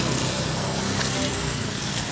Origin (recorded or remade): remade